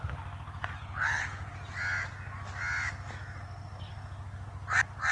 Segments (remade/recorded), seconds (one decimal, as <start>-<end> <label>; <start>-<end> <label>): 0.0-0.8 recorded; 0.8-1.5 remade; 1.5-5.1 recorded